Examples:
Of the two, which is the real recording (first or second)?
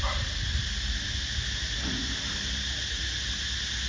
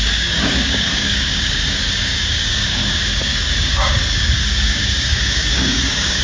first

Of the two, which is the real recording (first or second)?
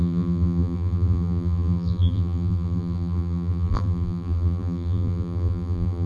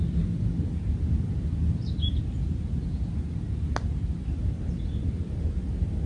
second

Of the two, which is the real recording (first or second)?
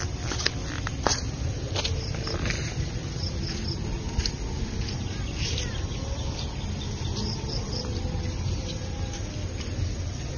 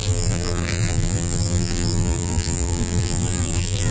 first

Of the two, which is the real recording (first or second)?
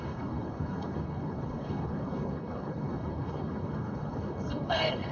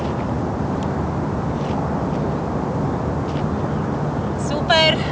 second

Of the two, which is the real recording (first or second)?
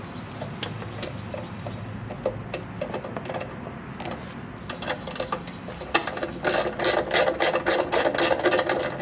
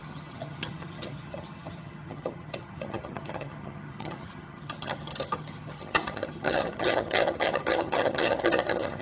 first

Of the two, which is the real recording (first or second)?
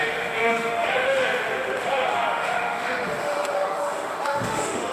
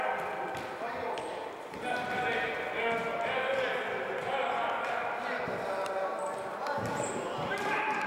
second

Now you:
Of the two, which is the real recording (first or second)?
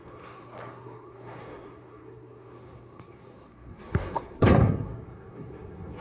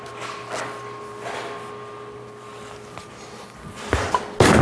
second